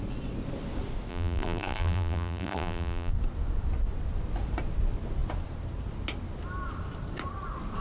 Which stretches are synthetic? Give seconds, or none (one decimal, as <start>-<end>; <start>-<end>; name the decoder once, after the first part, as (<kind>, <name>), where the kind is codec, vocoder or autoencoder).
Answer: 1.1-3.1 (vocoder, BigVGAN v2)